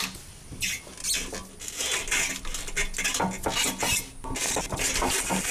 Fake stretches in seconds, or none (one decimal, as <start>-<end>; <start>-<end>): none